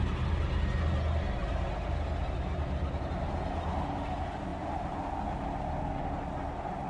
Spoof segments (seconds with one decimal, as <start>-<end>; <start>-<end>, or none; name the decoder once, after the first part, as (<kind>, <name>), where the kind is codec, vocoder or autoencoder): none